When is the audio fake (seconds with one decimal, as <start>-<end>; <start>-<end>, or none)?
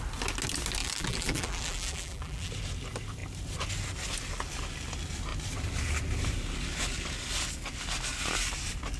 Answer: 0.8-2.5